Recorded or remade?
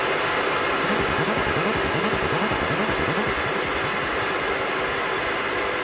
recorded